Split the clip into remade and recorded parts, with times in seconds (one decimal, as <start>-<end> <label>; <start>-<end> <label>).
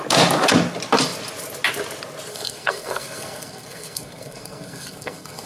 0.0-2.3 recorded; 2.3-5.5 remade